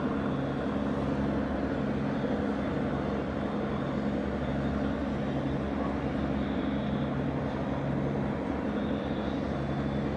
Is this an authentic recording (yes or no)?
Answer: yes